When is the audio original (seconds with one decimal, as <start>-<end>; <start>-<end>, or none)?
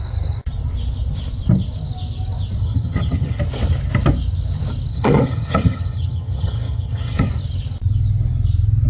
0.0-2.6; 3.4-4.9; 7.3-8.9